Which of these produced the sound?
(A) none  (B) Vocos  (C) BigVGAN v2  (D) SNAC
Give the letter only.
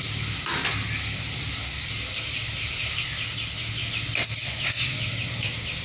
A